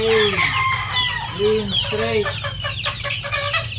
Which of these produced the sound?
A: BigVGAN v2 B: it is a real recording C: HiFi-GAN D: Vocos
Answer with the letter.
B